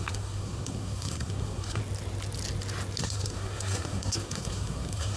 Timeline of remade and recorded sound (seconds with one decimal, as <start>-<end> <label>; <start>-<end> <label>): 0.0-1.8 remade; 1.8-3.0 recorded; 3.0-5.2 remade